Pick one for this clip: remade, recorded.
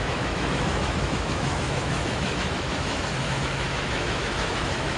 remade